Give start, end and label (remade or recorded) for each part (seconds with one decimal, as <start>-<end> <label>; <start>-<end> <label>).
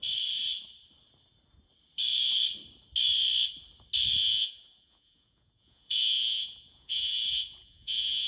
0.0-4.2 recorded; 4.2-8.3 remade